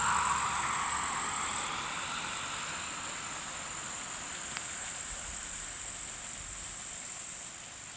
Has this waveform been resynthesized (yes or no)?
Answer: no